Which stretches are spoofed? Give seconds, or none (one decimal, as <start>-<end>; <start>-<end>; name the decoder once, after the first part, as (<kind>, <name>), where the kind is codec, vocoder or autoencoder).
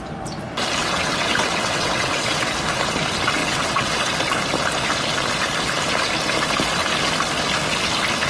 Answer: 0.8-2.5 (vocoder, WaveNeXt); 3.4-4.1